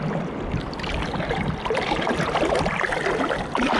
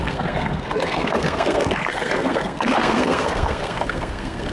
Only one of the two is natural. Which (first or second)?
first